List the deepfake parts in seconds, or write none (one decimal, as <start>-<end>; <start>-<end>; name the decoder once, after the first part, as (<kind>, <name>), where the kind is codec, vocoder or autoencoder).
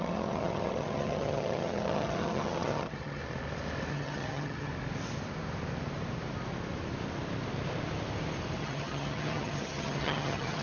0.0-3.2 (vocoder, HiFi-GAN); 3.9-4.7; 8.6-10.6